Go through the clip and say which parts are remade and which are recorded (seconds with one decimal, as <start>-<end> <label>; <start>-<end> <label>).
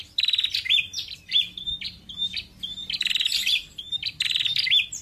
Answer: 0.0-2.0 remade; 2.0-2.8 recorded; 2.8-5.0 remade